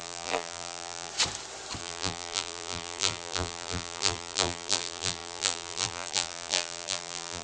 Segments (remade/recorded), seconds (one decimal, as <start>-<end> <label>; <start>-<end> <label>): 0.0-1.1 remade; 1.1-1.8 recorded; 1.8-7.4 remade